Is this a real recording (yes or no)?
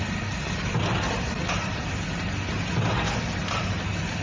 yes